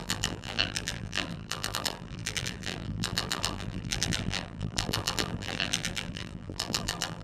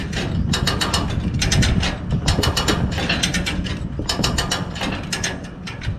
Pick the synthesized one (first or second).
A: first